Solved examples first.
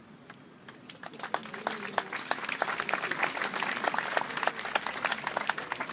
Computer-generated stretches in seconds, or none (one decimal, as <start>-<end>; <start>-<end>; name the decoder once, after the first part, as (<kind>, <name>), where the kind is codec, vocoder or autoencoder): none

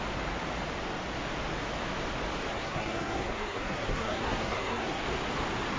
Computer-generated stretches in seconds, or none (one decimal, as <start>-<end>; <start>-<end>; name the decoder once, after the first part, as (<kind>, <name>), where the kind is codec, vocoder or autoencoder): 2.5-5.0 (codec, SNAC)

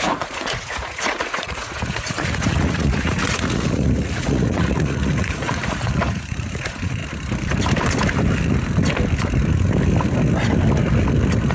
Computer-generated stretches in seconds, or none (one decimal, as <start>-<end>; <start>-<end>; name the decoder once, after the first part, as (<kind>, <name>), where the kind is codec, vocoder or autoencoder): 0.0-7.0 (vocoder, Vocos)

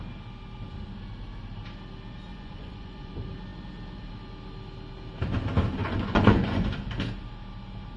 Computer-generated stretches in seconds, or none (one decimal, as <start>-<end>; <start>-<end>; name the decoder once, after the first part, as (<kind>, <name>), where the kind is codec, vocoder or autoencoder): 2.3-3.1 (vocoder, Vocos); 5.8-6.7

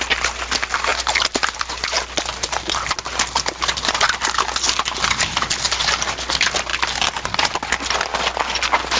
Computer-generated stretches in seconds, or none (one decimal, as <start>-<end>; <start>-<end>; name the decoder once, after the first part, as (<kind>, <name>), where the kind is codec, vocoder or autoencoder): none

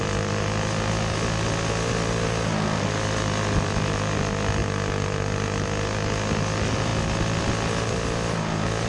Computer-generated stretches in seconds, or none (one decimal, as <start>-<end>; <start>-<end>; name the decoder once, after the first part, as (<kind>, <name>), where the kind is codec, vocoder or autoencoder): none

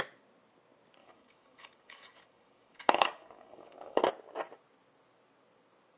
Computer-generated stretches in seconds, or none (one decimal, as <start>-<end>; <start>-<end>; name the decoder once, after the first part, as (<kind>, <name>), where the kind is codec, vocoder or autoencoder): 1.0-4.1 (codec, DAC)

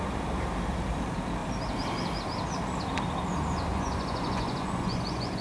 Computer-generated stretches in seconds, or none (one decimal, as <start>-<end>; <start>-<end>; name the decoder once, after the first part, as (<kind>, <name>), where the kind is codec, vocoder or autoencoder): 3.7-5.4 (vocoder, Vocos)